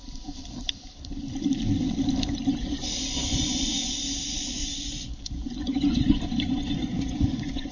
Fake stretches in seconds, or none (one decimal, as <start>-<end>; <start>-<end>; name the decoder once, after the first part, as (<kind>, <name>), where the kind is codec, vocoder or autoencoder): 2.5-7.7 (vocoder, Vocos)